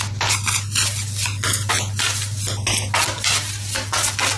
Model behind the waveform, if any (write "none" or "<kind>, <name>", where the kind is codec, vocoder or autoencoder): none